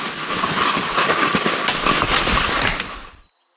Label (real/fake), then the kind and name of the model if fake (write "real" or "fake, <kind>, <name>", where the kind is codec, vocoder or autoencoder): real